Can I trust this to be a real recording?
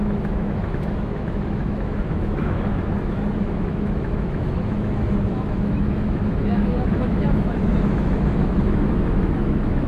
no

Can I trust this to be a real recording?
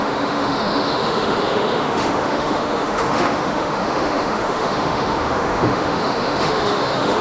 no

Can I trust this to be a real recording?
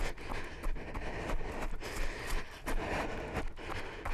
yes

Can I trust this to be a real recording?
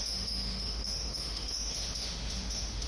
no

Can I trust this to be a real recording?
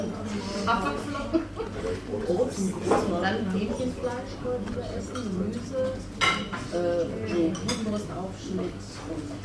yes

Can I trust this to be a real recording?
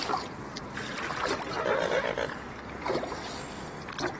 yes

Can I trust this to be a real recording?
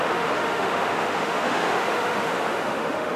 no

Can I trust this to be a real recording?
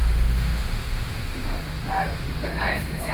no